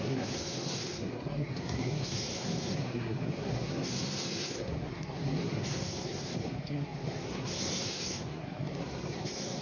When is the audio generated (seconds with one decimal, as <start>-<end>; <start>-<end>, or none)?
0.0-9.6